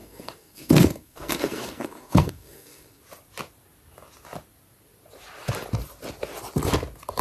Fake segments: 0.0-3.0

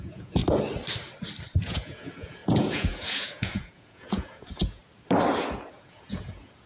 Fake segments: 0.0-0.4; 1.6-4.8; 5.7-6.7